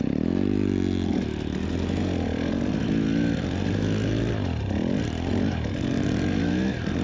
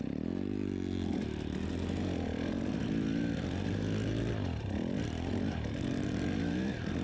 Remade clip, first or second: second